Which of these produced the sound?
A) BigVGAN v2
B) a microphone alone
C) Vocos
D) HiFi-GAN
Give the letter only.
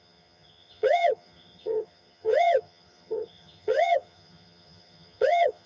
D